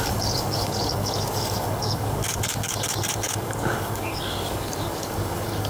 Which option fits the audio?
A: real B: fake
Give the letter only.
B